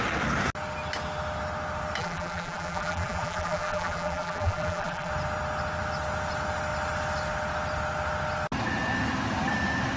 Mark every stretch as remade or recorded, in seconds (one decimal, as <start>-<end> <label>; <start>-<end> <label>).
0.0-2.0 recorded; 2.0-5.1 remade; 5.1-10.0 recorded